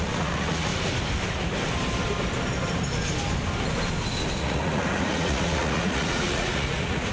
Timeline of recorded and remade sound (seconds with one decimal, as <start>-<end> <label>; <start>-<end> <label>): 0.0-0.7 remade; 0.7-4.4 recorded; 4.4-7.1 remade